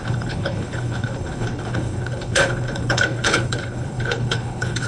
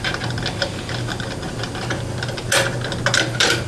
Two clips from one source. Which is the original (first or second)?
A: second